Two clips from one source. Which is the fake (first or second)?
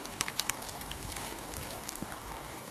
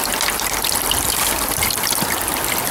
first